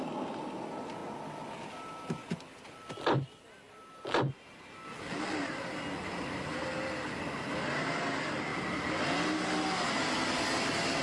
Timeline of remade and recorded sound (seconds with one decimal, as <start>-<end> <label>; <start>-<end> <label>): 0.0-11.0 recorded